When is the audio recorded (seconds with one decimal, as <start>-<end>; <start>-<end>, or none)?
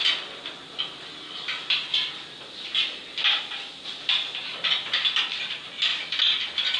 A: 0.0-6.8